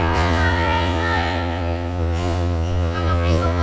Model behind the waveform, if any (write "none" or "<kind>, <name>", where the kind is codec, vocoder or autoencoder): vocoder, Vocos